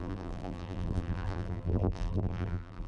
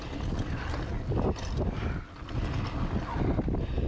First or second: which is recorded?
second